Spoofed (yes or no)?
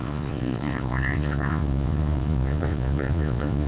yes